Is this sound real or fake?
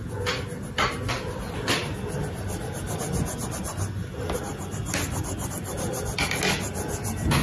real